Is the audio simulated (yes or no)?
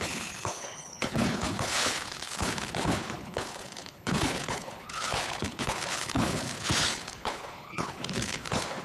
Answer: yes